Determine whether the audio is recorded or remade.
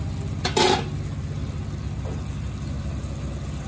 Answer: recorded